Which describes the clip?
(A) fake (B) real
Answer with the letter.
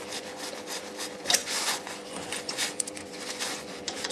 A